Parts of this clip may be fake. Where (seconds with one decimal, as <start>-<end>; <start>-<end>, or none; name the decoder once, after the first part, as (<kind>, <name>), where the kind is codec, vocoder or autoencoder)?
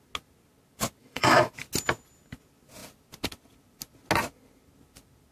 1.0-1.5 (autoencoder, DAC-VAE)